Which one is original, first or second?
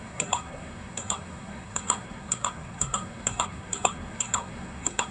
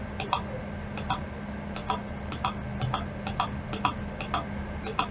second